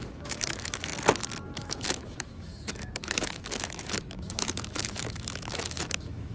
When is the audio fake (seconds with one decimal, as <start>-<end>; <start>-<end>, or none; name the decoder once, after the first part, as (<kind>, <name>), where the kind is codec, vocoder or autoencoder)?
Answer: 0.0-0.9 (autoencoder, DAC-VAE); 1.6-6.3